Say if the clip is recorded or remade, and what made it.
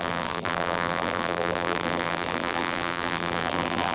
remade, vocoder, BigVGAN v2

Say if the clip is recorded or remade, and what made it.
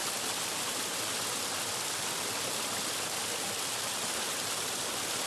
recorded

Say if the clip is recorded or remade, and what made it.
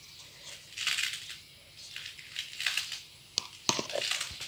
recorded